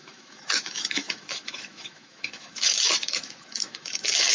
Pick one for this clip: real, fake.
fake